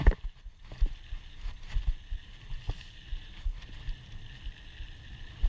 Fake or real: real